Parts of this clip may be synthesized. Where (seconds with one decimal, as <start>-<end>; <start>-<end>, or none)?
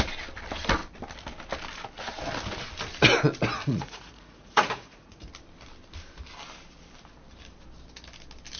3.6-5.3